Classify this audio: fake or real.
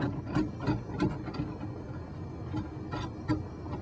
real